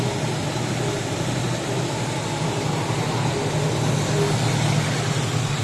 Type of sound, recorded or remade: recorded